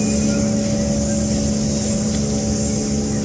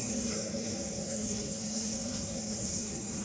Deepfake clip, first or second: second